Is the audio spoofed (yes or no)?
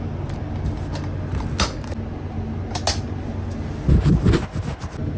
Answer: no